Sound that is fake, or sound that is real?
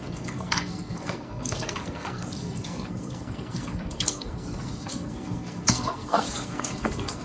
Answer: fake